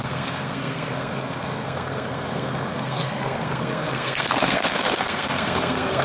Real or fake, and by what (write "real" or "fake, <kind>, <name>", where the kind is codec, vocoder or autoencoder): fake, codec, SNAC